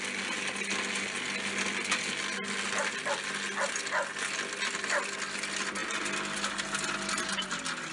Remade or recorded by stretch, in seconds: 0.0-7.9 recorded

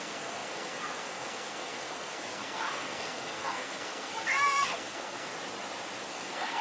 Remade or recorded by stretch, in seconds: 0.0-5.3 remade; 5.3-6.1 recorded; 6.1-6.6 remade

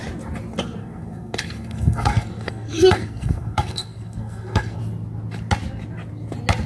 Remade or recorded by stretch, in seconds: 0.0-0.8 recorded; 0.8-4.8 remade; 4.8-6.7 recorded

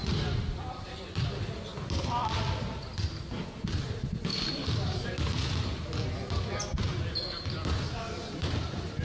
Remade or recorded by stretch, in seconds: 0.0-9.0 recorded